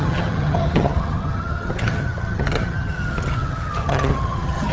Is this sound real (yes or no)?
no